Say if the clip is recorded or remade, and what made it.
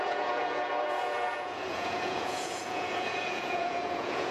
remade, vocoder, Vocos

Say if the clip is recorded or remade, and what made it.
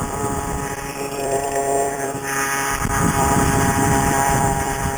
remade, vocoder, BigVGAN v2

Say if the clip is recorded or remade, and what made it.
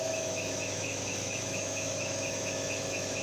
remade, autoencoder, DAC-VAE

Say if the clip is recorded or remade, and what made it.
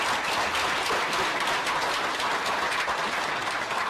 recorded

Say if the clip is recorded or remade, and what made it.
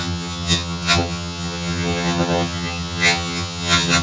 remade, vocoder, HiFi-GAN